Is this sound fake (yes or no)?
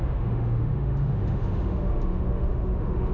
yes